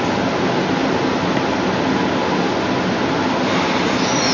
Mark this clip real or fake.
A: real